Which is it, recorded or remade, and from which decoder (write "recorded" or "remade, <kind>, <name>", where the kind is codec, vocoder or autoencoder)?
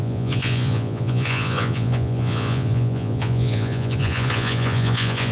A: remade, vocoder, Vocos